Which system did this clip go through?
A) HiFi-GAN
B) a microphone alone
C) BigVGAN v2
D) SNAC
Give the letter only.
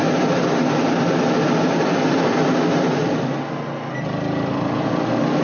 B